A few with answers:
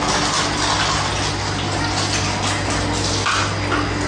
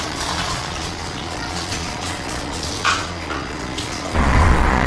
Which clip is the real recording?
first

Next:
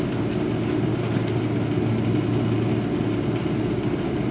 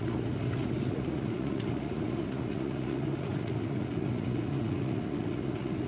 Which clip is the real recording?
first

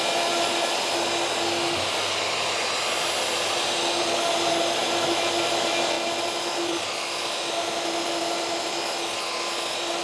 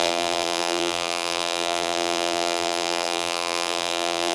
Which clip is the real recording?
first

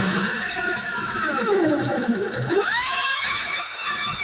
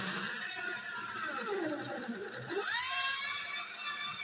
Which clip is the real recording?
second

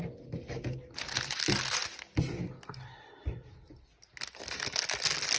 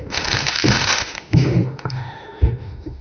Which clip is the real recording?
first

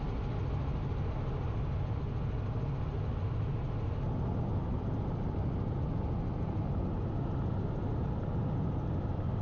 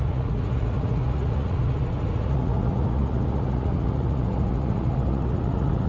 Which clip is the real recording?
first